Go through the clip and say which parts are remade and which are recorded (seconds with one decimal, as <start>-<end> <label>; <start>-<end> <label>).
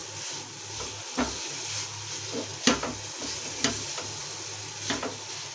0.0-5.5 recorded